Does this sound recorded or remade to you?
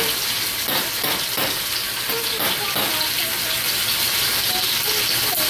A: recorded